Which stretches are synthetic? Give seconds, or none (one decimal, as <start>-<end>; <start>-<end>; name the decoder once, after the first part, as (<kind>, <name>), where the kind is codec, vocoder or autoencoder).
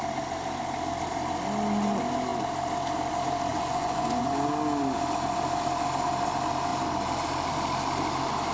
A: 3.5-4.3 (vocoder, Vocos)